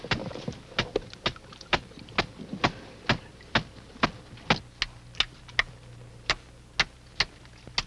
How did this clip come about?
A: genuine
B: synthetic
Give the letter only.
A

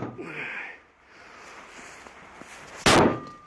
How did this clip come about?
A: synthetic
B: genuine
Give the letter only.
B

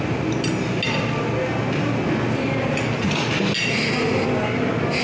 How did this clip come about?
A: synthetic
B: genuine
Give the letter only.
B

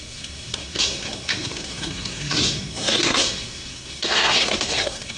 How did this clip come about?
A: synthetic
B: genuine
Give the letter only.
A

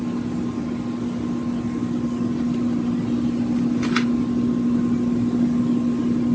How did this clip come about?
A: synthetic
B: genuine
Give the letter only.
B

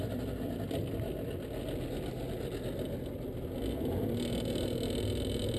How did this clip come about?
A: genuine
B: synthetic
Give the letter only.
A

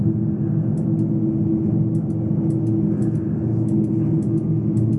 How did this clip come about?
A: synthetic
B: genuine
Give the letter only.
B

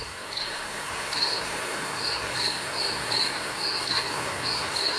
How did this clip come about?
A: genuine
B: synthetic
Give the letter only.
B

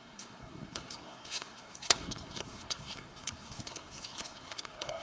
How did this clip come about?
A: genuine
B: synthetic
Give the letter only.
B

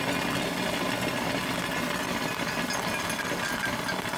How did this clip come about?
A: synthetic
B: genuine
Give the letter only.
B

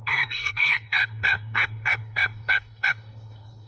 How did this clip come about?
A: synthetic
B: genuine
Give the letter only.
A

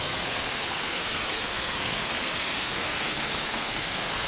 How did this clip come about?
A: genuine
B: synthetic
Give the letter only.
B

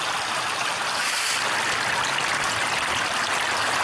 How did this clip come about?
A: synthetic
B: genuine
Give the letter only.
B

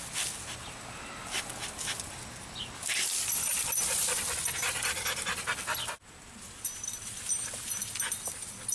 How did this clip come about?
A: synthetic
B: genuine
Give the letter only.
B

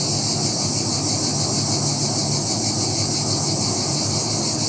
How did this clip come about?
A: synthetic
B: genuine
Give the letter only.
B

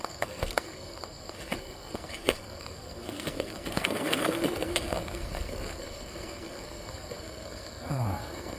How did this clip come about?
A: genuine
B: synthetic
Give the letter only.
B